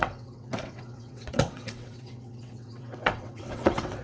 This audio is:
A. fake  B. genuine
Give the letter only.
A